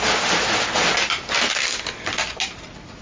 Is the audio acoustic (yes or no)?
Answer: yes